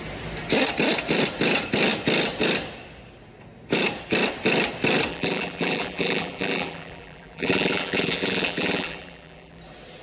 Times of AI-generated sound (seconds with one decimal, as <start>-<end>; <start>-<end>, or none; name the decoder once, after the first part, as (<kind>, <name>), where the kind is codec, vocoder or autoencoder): 5.1-9.6 (vocoder, BigVGAN v2)